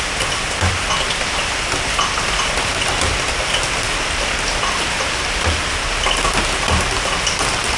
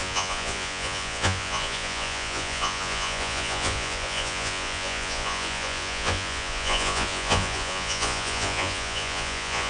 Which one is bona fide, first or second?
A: first